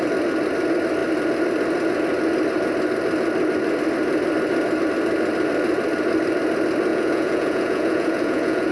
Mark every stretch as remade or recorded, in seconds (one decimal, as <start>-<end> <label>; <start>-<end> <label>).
0.0-6.9 recorded; 6.9-8.7 remade